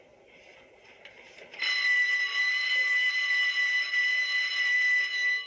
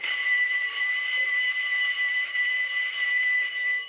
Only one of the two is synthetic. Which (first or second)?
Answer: second